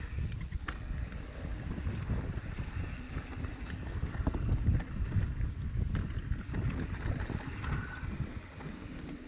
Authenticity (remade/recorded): recorded